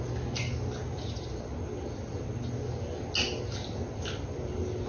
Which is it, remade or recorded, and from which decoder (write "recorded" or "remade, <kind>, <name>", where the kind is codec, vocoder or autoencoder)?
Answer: recorded